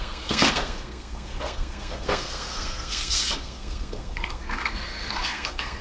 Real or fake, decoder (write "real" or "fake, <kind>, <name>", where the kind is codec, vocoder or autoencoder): fake, codec, SNAC